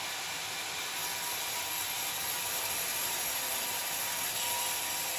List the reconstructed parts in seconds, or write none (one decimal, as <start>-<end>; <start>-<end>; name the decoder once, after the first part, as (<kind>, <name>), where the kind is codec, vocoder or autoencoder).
none